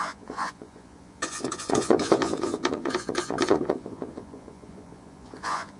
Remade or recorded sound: remade